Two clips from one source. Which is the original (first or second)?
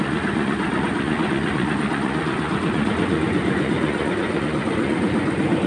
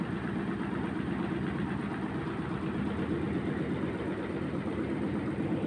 second